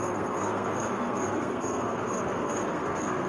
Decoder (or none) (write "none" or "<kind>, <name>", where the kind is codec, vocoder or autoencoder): codec, SNAC